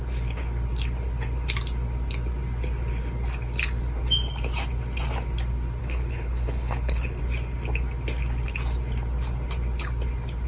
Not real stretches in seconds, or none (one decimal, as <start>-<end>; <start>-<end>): 5.8-7.2